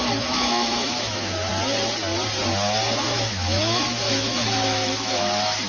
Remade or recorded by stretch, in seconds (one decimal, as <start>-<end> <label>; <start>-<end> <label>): 0.0-1.5 remade; 1.5-3.0 recorded; 3.0-5.7 remade